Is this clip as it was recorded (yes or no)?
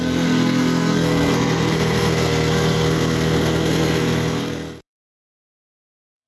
no